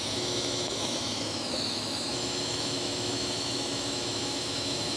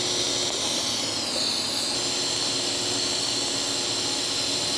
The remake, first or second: first